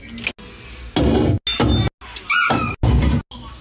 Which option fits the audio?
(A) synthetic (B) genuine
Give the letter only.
B